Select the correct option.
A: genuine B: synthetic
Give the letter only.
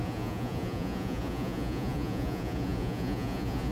B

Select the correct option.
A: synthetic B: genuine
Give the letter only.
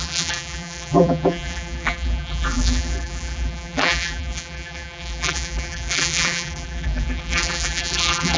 A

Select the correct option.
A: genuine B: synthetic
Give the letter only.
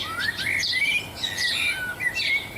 A